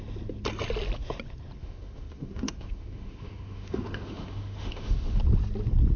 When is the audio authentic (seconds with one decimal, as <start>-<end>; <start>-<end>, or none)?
0.0-1.6; 5.2-6.0